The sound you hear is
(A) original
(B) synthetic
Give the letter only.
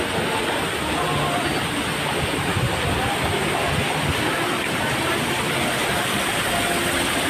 A